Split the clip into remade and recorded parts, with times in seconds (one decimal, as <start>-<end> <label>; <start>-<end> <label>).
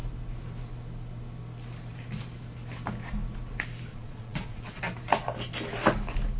0.0-3.9 recorded; 3.9-4.8 remade; 4.8-6.4 recorded